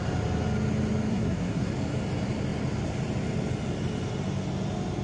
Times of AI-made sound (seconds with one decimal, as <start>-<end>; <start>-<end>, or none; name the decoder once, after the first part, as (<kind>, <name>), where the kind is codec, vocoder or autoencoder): 1.1-1.7 (codec, SNAC)